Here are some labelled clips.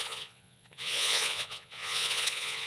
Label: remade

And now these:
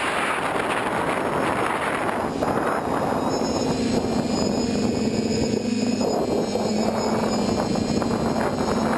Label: recorded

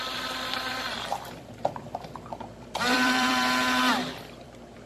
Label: remade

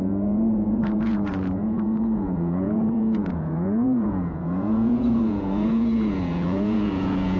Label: remade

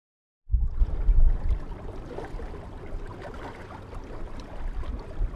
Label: remade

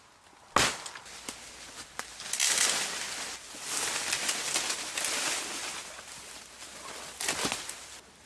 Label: recorded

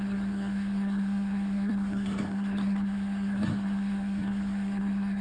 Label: remade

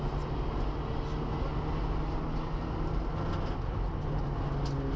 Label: recorded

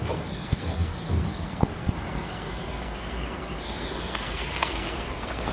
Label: remade